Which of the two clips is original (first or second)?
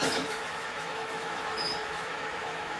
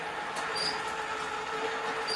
second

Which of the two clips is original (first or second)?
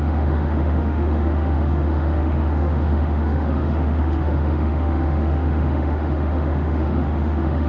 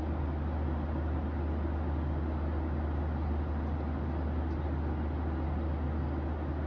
second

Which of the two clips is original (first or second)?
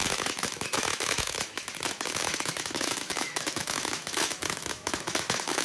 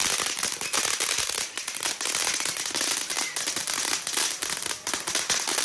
second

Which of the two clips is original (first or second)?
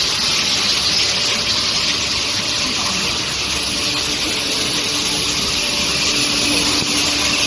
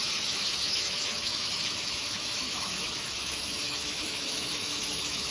first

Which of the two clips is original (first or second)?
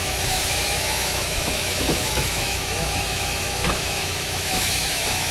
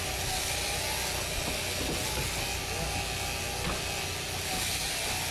second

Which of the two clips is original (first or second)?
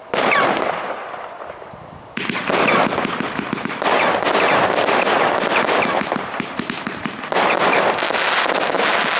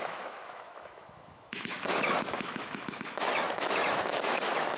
first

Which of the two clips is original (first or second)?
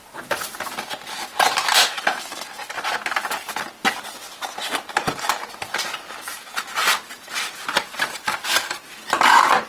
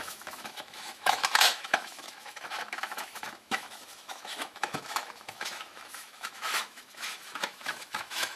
first